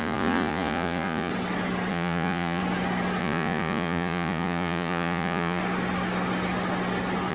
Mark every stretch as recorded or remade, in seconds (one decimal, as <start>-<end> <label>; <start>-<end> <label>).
0.0-1.3 remade; 1.3-1.9 recorded; 1.9-2.6 remade; 2.6-3.2 recorded; 3.2-5.6 remade; 5.6-7.3 recorded